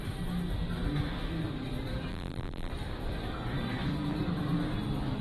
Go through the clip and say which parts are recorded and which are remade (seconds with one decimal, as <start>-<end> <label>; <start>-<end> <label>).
0.0-2.1 recorded; 2.1-2.7 remade; 2.7-5.2 recorded